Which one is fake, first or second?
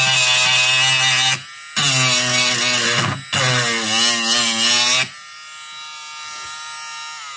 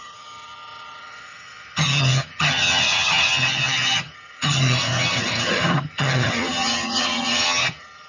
second